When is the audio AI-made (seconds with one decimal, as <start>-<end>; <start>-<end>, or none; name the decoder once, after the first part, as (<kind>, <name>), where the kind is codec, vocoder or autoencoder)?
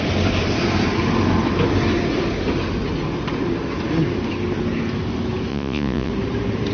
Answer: 5.5-6.1 (vocoder, Vocos)